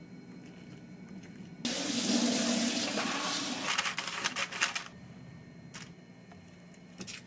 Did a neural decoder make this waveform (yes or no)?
no